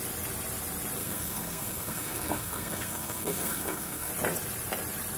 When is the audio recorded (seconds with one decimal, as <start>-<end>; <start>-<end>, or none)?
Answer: 0.0-1.0; 4.1-5.2